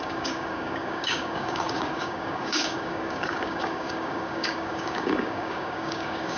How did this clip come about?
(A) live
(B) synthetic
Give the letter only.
B